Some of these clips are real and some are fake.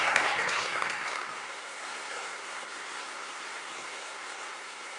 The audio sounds fake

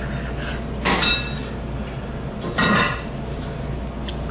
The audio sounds real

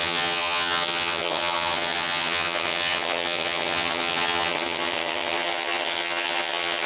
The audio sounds fake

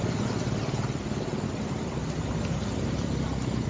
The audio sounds real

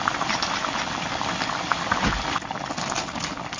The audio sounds real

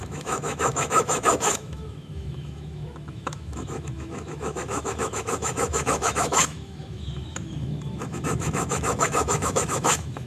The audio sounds fake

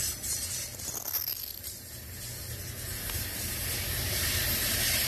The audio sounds real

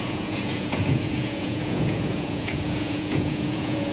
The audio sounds fake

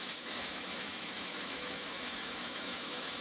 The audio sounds fake